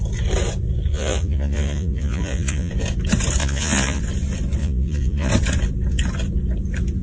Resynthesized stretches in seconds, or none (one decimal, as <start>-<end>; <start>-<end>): 0.9-2.7; 3.4-4.0; 4.6-5.3

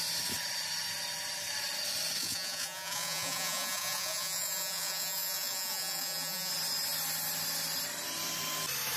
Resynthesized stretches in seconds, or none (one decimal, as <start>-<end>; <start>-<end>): 2.2-6.5

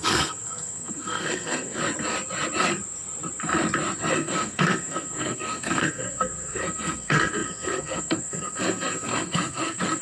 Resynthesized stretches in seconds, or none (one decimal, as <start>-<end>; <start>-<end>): 0.0-1.8; 4.1-10.0

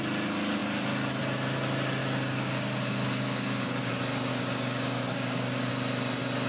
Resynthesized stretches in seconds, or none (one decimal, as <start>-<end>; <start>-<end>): 2.0-3.9; 4.3-5.7

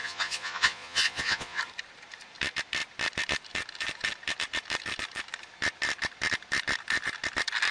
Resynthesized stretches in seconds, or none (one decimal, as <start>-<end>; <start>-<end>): 0.0-1.6

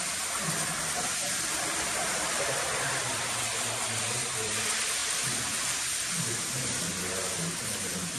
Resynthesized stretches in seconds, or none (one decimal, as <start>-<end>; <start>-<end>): 0.0-5.0

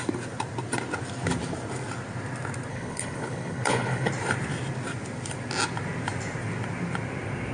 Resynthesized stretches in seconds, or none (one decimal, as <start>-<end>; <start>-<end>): 2.7-4.1